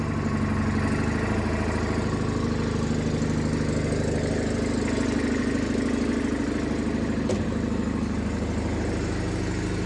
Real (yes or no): yes